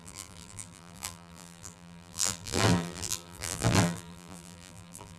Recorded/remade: remade